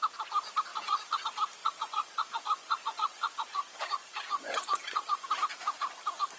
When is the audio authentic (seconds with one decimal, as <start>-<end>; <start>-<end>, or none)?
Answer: 0.0-0.7; 1.2-1.6; 5.3-6.4